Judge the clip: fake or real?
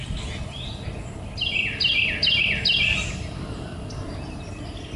real